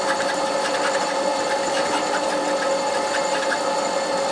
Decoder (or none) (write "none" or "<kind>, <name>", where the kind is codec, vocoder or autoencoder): none